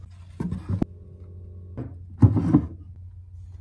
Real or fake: real